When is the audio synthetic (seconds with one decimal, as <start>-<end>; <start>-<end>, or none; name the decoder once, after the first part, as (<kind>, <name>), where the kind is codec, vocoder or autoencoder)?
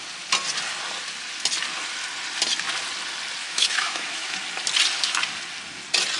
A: 3.4-4.4 (autoencoder, DAC-VAE)